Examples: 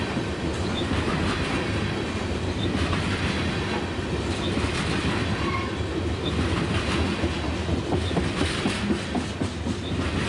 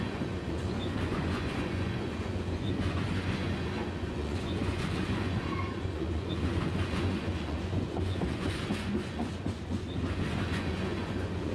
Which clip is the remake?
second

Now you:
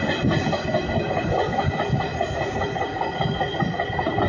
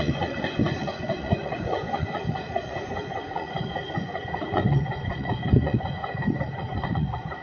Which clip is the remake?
second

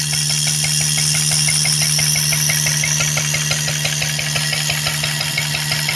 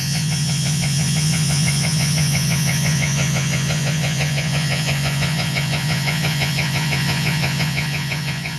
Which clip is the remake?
second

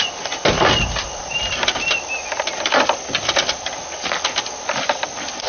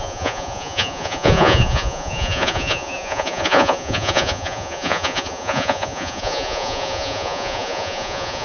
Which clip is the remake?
second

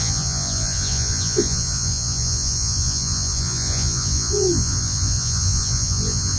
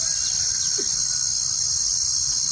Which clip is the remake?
first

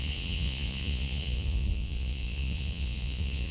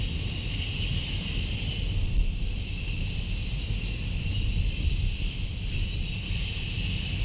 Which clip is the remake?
first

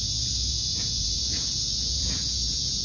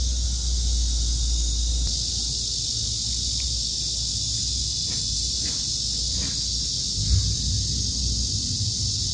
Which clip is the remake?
first